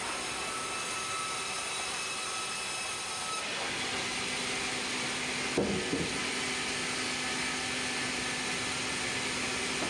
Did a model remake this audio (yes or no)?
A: no